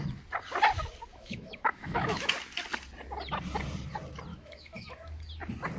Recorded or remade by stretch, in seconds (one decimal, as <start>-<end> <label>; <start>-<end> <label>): 0.0-1.1 recorded; 1.1-2.3 remade; 2.3-4.3 recorded; 4.3-5.3 remade; 5.3-5.8 recorded